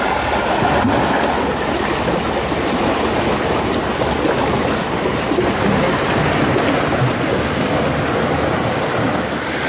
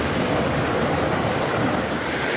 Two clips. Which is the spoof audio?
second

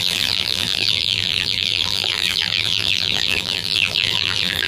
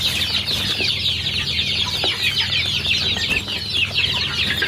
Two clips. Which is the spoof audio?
first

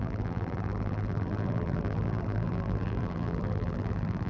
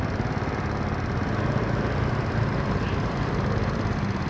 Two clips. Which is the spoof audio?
first